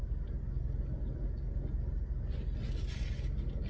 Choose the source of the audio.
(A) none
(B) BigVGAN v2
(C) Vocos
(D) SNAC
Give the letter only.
A